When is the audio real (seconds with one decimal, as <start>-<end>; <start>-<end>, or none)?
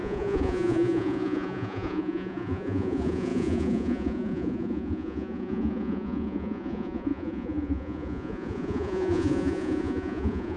none